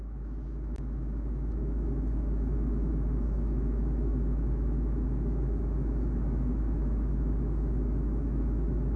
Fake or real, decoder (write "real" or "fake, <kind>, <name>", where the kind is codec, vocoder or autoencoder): fake, autoencoder, DAC-VAE